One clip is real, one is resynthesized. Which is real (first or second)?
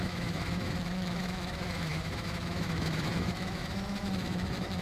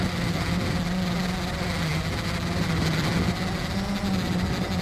second